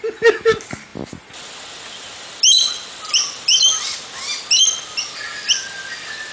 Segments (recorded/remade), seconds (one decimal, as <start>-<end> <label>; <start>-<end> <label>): 0.0-6.3 recorded

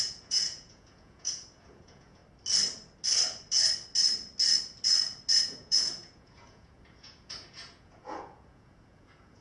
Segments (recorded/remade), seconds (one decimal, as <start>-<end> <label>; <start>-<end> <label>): 0.0-2.2 remade; 2.2-5.4 recorded; 5.4-9.4 remade

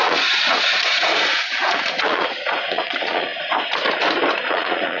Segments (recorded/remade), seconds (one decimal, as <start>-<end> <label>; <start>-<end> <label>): 0.0-3.3 remade; 3.3-4.5 recorded; 4.5-5.0 remade

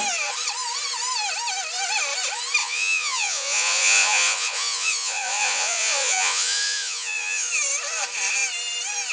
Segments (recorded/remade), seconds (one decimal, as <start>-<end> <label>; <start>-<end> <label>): 0.0-2.6 recorded; 2.6-7.5 remade; 7.5-9.1 recorded

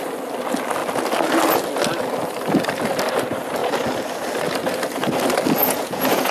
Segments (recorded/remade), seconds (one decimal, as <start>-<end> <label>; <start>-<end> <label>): 0.0-5.6 recorded; 5.6-6.3 remade